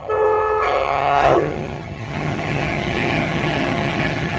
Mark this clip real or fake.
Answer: fake